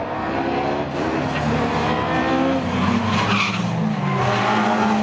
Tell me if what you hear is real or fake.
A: real